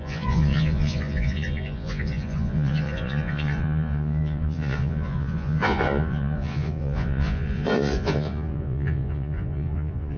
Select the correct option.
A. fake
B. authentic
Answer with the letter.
A